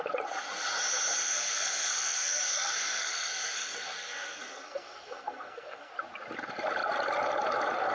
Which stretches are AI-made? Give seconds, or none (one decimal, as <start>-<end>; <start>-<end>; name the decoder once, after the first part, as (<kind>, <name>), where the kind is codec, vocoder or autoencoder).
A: 1.2-5.9 (codec, SNAC)